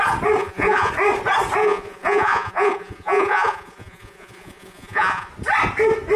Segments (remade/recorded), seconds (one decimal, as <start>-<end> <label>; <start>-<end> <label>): 0.0-0.4 recorded; 0.4-0.9 remade; 0.9-1.6 recorded; 1.6-5.3 remade; 5.3-6.2 recorded